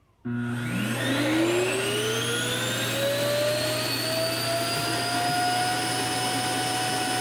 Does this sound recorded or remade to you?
recorded